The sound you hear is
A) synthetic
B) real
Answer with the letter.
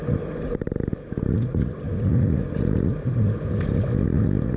B